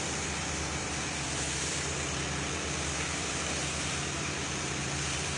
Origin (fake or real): fake